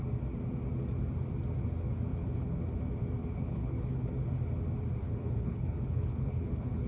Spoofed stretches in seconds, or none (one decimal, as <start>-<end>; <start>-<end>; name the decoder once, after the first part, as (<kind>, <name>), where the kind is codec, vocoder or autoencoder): 2.1-2.6 (codec, HILCodec); 3.2-4.1; 5.0-6.9

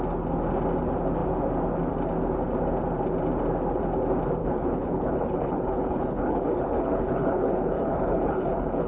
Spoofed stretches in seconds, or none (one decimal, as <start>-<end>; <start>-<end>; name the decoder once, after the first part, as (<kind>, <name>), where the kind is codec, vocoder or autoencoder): 4.4-8.9 (codec, HILCodec)